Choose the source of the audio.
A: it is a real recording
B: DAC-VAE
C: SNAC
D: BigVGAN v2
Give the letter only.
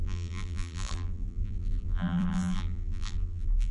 D